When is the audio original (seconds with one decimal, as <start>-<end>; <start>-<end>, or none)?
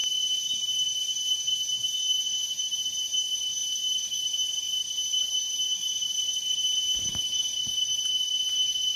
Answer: 0.0-9.0